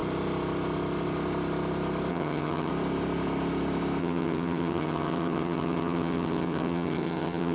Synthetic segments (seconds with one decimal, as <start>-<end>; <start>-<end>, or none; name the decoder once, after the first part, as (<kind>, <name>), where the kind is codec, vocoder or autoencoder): 2.1-2.7 (vocoder, HiFi-GAN); 4.0-7.5